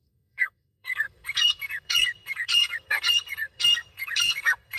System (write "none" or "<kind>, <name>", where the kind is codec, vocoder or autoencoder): codec, SNAC